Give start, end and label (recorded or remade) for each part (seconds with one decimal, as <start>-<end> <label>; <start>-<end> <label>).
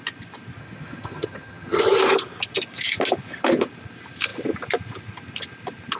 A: 0.0-0.6 recorded; 0.6-1.8 remade; 1.8-6.0 recorded